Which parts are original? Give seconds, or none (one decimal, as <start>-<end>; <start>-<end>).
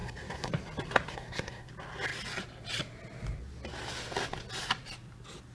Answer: 0.5-1.1; 1.7-5.5